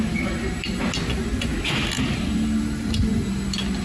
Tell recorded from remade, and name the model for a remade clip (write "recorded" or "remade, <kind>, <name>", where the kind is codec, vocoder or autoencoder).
recorded